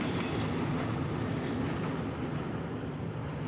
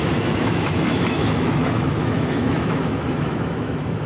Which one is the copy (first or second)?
second